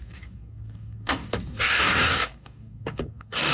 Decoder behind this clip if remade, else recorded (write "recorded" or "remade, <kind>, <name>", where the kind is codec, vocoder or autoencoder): remade, codec, DAC